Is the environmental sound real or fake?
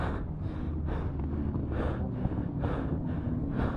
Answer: real